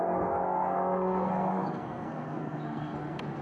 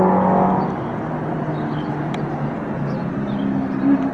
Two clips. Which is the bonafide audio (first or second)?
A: second